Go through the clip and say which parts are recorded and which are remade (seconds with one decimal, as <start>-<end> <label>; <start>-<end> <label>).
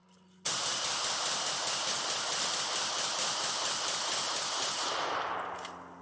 0.0-6.0 recorded